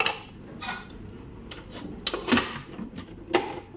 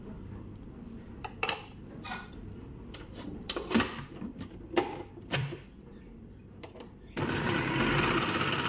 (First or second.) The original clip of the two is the first